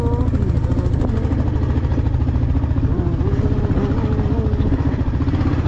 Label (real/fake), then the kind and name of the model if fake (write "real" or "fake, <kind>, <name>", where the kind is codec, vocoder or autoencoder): real